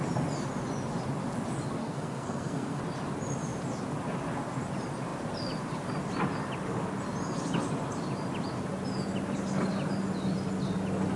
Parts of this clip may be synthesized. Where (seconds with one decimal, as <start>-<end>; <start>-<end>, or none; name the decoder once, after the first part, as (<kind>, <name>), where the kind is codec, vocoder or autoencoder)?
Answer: 1.8-2.8 (codec, SNAC)